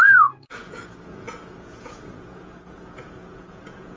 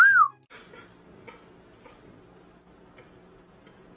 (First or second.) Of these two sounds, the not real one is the first